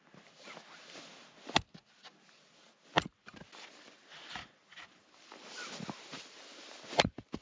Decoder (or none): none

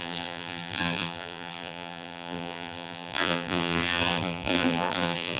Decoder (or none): vocoder, BigVGAN v2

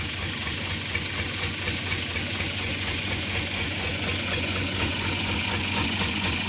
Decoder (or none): vocoder, Vocos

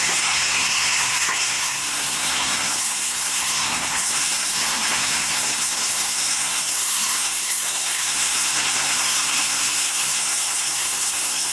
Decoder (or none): codec, SNAC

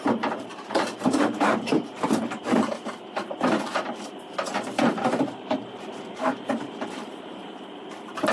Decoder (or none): vocoder, BigVGAN v2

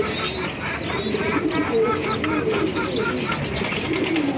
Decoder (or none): none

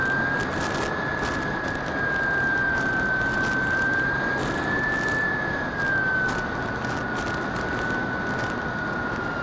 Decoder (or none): none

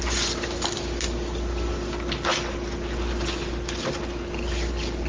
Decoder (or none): none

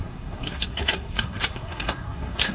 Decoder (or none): codec, SNAC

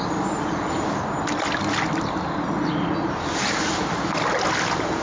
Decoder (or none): none